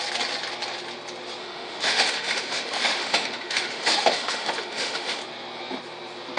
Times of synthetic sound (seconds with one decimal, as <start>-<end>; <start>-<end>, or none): 1.4-5.2

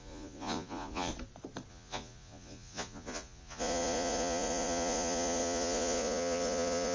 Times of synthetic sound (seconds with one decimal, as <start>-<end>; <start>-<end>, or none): 0.0-1.1; 1.7-6.9

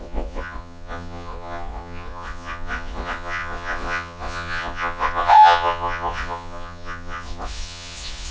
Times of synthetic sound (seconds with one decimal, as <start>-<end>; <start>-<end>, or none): 0.0-8.3

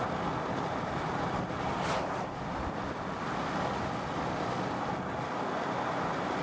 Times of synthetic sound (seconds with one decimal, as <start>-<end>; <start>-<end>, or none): none

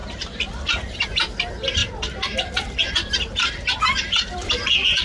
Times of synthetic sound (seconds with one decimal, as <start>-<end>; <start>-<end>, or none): 0.0-0.9

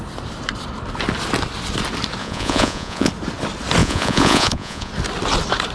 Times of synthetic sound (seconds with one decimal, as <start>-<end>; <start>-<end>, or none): 2.2-3.1; 3.8-4.9

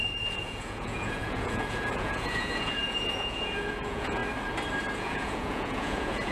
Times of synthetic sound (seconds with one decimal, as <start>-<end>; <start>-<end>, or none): 0.0-4.2; 5.0-6.3